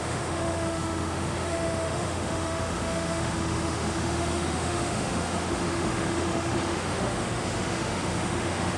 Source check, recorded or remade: remade